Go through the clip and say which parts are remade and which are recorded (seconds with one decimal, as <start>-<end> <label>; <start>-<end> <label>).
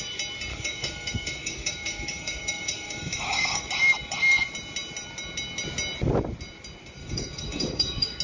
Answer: 0.0-0.5 recorded; 0.5-3.7 remade; 3.7-7.0 recorded; 7.0-8.2 remade